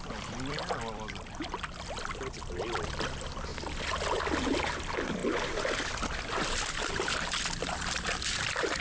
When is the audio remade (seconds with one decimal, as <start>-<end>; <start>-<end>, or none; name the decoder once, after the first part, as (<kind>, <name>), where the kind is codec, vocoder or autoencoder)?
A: 0.0-3.5 (vocoder, BigVGAN v2); 4.5-5.2; 5.9-8.8